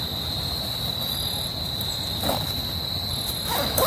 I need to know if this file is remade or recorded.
recorded